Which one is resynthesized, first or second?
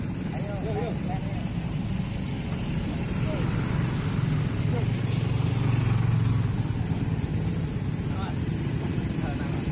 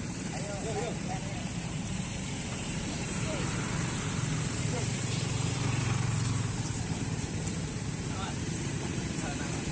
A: second